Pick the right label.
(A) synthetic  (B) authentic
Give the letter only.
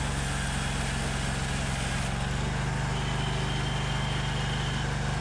B